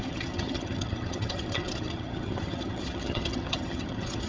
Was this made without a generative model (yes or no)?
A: no